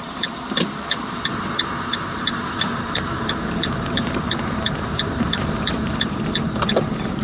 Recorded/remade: remade